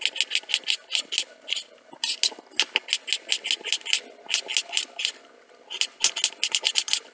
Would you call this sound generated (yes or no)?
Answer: no